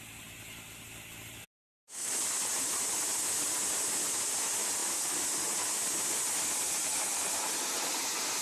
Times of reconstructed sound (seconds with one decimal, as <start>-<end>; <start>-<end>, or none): 1.5-2.1